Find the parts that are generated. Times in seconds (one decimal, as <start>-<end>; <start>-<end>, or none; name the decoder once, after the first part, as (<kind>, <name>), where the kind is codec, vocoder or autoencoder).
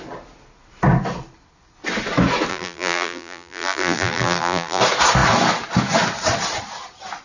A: 2.5-4.8 (vocoder, BigVGAN v2)